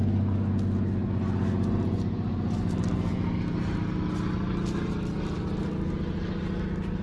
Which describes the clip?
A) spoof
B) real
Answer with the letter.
B